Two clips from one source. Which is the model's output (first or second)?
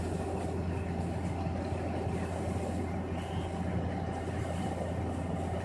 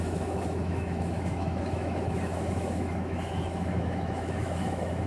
second